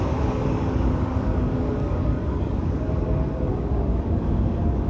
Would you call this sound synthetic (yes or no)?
yes